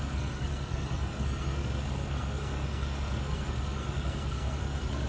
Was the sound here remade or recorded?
remade